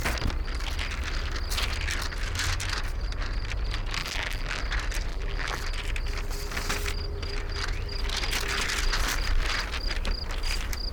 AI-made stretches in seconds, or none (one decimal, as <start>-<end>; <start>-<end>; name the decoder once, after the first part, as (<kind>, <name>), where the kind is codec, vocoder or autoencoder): 4.0-4.6 (vocoder, BigVGAN v2); 5.1-5.6